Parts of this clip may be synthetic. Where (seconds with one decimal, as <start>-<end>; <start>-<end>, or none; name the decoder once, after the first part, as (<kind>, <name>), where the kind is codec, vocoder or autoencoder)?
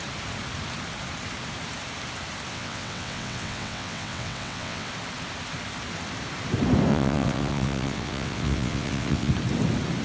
2.5-4.9 (vocoder, WaveNeXt); 6.9-9.3